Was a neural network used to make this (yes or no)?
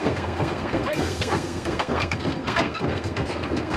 yes